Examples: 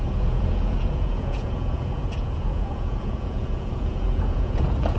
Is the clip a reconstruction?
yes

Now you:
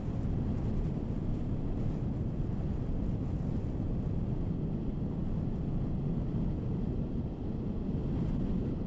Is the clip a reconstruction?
no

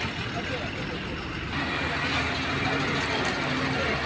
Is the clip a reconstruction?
no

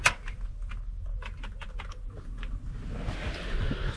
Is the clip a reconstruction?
no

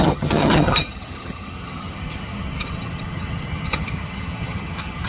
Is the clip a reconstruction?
yes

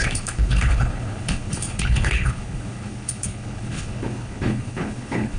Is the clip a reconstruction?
yes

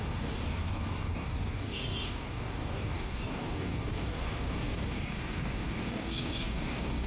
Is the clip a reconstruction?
yes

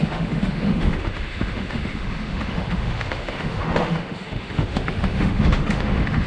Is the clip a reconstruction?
yes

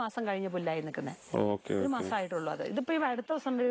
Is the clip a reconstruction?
no